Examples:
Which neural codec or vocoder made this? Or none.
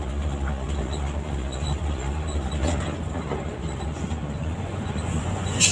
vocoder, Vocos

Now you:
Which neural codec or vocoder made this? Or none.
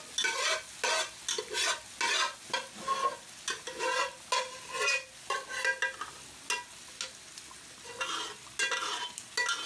none